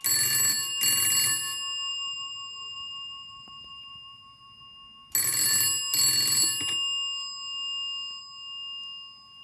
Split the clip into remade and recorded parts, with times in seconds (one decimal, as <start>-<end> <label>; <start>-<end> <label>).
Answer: 0.0-1.9 recorded; 1.9-4.6 remade; 4.6-9.4 recorded